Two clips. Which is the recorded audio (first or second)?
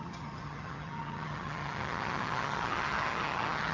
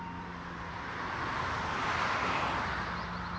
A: second